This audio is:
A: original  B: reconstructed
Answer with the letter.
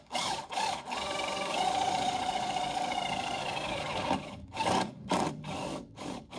B